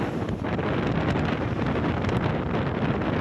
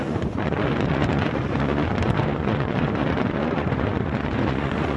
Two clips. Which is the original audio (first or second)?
first